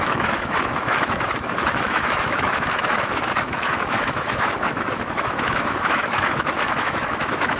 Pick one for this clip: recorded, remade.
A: remade